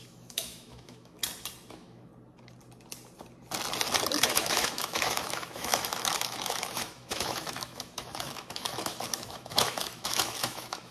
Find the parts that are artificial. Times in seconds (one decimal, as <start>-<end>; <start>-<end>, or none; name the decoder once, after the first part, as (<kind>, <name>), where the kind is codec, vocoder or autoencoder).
0.0-1.2 (autoencoder, DAC-VAE); 1.7-2.1; 4.2-10.9